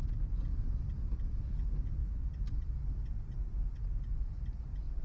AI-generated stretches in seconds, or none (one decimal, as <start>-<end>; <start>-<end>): none